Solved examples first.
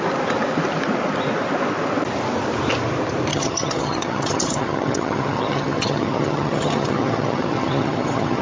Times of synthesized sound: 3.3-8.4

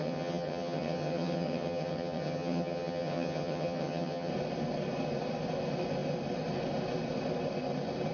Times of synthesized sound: 0.0-4.3

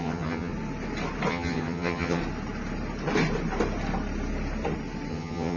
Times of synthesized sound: 0.0-0.5; 1.3-2.2; 5.1-5.6

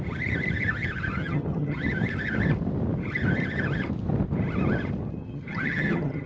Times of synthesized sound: 1.2-1.8; 5.2-6.3